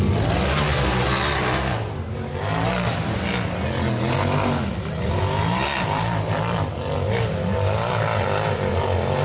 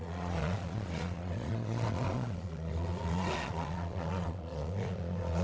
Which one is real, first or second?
first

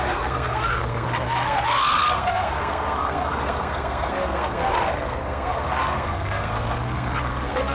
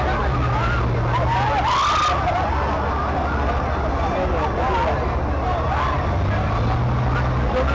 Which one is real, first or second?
second